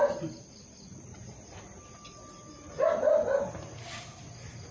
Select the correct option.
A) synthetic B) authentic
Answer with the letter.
B